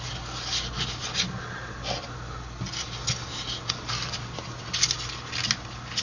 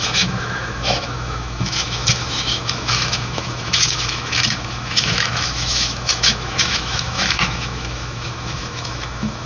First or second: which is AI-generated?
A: second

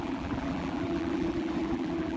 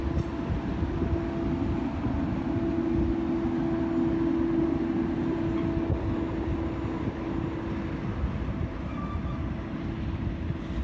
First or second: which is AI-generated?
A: first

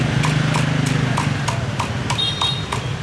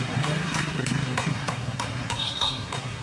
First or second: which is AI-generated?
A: second